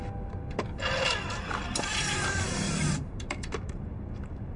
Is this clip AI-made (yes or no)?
no